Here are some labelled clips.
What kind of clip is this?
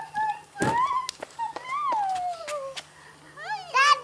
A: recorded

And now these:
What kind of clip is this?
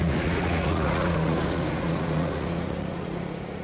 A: remade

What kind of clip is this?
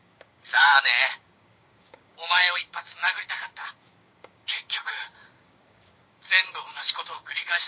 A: remade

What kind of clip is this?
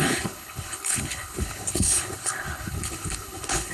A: remade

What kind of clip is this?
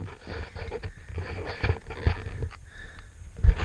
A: recorded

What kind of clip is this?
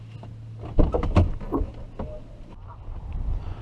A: recorded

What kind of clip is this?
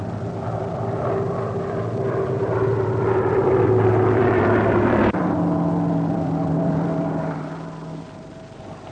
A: remade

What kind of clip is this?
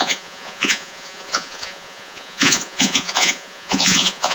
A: remade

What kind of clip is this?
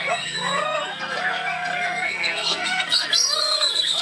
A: remade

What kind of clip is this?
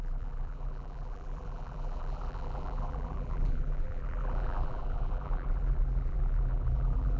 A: remade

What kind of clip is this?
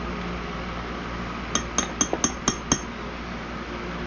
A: recorded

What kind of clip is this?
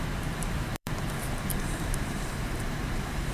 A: remade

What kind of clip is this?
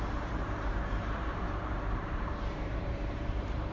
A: remade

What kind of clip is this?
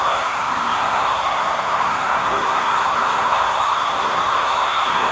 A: remade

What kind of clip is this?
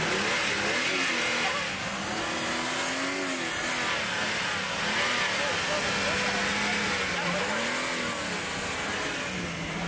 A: recorded